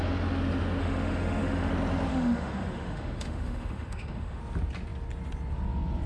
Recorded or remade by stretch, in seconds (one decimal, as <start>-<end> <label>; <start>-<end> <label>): 0.0-0.8 recorded; 0.8-1.7 remade; 1.7-2.1 recorded; 2.1-4.4 remade; 4.4-6.1 recorded